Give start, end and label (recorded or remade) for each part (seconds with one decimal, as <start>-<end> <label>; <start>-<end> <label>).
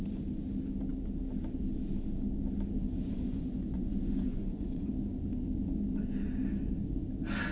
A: 0.0-3.0 recorded; 3.0-4.9 remade; 4.9-7.5 recorded